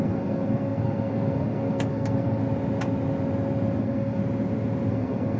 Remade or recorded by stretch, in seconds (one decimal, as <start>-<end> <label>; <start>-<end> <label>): 0.0-2.4 remade; 2.4-3.8 recorded; 3.8-4.2 remade; 4.2-4.9 recorded; 4.9-5.4 remade